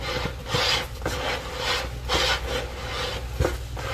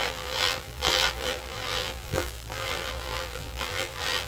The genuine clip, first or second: first